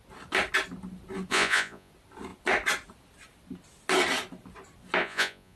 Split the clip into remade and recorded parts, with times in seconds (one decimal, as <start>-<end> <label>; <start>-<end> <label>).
0.0-1.3 recorded; 1.3-1.9 remade; 1.9-5.0 recorded; 5.0-5.6 remade